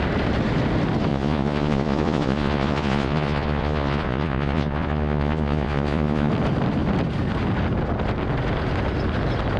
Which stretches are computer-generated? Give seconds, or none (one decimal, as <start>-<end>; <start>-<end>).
1.1-6.3

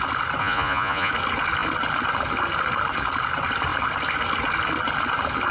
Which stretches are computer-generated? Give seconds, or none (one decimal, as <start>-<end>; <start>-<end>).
0.4-1.1